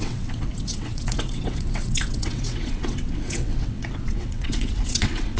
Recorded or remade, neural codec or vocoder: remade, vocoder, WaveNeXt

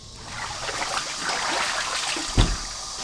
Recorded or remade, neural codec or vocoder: recorded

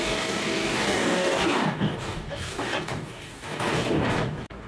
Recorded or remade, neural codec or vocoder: remade, codec, DAC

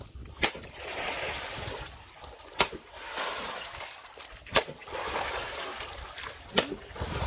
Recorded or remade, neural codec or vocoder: recorded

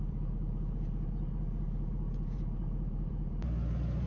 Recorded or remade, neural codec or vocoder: remade, vocoder, BigVGAN v2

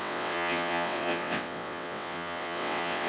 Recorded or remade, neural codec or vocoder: remade, vocoder, WaveNeXt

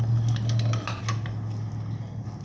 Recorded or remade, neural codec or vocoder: recorded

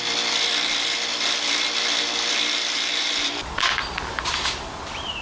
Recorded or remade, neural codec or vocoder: remade, vocoder, BigVGAN v2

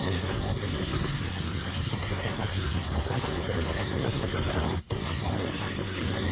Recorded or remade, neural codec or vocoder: remade, codec, SNAC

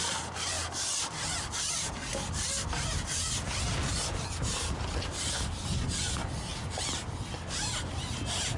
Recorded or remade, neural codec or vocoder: recorded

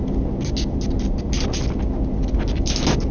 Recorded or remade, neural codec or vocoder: recorded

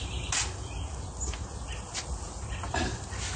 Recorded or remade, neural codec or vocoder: recorded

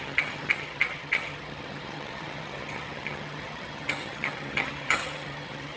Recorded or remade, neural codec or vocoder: remade, vocoder, HiFi-GAN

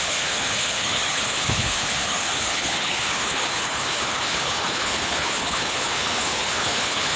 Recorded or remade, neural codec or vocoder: remade, codec, HILCodec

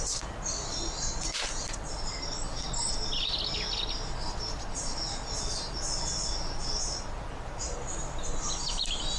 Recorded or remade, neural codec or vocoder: recorded